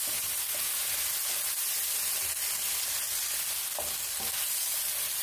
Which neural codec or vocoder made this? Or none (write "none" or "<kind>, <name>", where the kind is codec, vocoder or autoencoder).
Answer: none